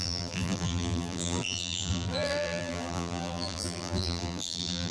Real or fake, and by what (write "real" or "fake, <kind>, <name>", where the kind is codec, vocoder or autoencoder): fake, vocoder, BigVGAN v2